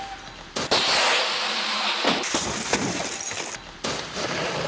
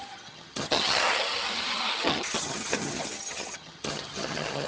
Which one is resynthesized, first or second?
second